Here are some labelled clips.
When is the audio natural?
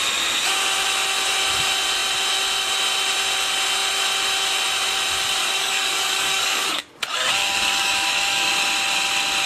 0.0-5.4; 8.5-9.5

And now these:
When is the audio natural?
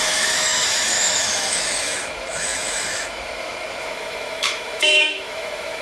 none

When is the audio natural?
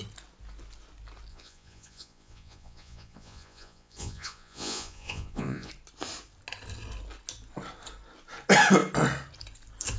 0.0-1.3; 5.7-10.0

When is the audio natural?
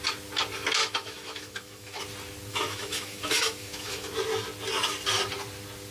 0.0-0.8; 2.0-2.5; 4.1-5.9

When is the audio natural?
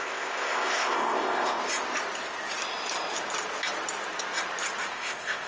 1.6-4.9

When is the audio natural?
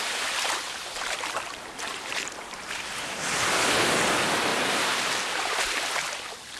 0.0-1.9; 2.6-4.5; 5.1-6.6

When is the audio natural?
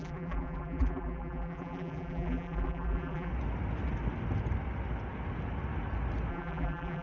3.3-6.3